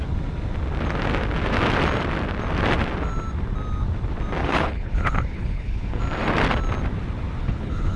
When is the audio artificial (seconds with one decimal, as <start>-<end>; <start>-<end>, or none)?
4.4-6.0; 7.4-8.0